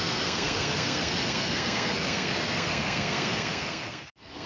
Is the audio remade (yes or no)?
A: yes